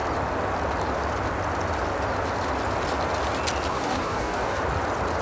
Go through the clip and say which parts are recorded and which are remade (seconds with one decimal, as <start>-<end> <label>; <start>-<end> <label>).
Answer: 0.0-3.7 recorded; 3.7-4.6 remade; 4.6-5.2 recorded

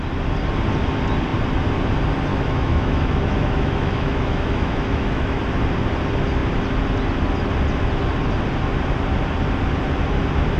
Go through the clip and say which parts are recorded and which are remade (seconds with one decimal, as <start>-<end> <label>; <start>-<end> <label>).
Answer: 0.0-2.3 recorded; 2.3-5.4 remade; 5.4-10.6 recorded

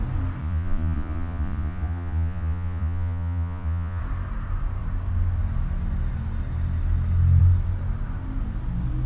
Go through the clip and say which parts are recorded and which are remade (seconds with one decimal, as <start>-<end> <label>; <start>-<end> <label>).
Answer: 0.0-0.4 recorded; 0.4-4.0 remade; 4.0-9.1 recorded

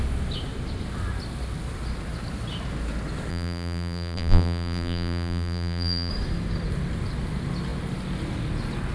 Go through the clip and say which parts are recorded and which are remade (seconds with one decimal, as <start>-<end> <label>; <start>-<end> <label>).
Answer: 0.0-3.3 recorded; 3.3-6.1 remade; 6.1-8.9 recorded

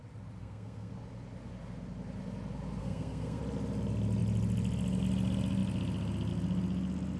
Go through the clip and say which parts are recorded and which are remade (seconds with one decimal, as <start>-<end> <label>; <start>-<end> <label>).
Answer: 0.0-0.4 recorded; 0.4-0.9 remade; 0.9-2.8 recorded; 2.8-3.4 remade; 3.4-7.2 recorded

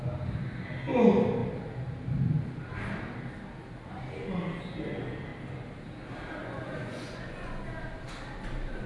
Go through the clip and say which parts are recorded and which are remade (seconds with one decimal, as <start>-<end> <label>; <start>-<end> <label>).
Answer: 0.0-6.4 recorded; 6.4-7.6 remade; 7.6-8.9 recorded

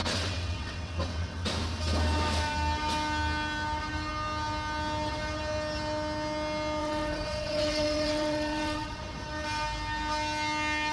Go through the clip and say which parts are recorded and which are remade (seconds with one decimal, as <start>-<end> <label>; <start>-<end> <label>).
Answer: 0.0-1.5 remade; 1.5-6.8 recorded; 6.8-9.0 remade; 9.0-10.9 recorded

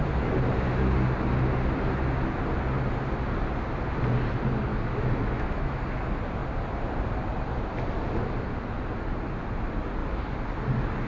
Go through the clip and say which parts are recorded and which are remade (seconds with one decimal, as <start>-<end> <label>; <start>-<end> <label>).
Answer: 0.0-4.7 recorded; 4.7-5.8 remade; 5.8-11.1 recorded